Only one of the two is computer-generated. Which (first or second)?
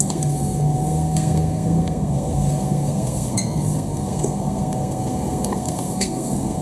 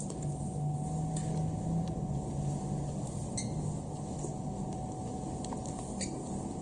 first